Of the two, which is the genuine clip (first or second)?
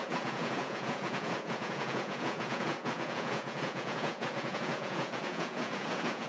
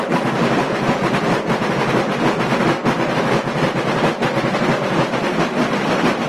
second